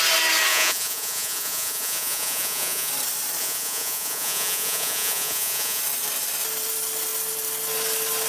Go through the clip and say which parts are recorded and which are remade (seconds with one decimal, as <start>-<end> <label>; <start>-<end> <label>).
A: 0.0-0.5 recorded; 0.5-2.9 remade; 2.9-3.4 recorded; 3.4-5.8 remade; 5.8-8.3 recorded